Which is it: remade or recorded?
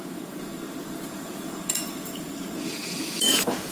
remade